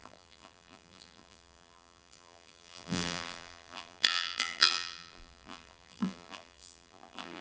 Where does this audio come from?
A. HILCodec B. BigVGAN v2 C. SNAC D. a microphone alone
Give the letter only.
B